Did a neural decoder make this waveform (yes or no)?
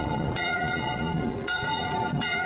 yes